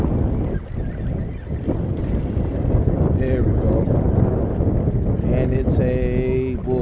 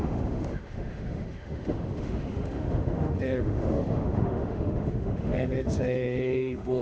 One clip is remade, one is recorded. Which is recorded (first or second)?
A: first